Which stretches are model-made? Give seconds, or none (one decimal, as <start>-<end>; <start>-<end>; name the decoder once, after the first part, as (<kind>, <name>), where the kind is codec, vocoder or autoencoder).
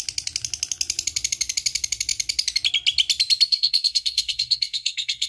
3.5-5.3 (codec, SNAC)